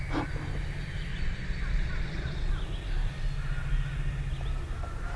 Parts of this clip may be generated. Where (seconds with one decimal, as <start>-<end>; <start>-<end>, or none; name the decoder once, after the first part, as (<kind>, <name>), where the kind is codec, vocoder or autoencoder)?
1.1-2.5 (vocoder, Vocos)